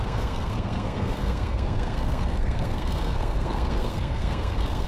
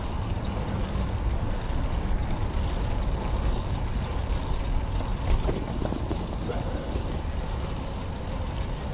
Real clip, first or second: second